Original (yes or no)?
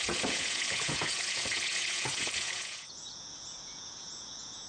no